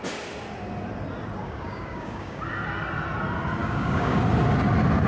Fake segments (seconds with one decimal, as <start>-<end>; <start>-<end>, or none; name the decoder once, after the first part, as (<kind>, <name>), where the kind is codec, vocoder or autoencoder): 1.4-2.4 (codec, DAC); 3.6-4.2